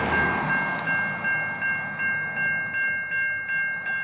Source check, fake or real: real